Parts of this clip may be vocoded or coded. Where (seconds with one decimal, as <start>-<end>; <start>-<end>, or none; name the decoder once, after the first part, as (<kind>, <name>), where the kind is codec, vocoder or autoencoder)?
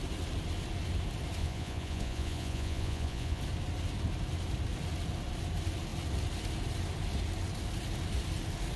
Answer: 1.4-3.4 (vocoder, Vocos)